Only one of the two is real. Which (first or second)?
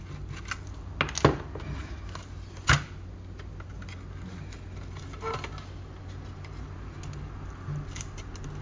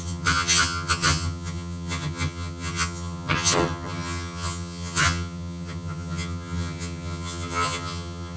first